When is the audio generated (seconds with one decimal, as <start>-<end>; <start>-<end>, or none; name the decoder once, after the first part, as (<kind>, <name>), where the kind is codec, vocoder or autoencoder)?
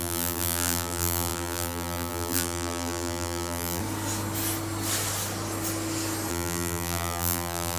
0.0-3.8 (vocoder, BigVGAN v2); 6.3-7.8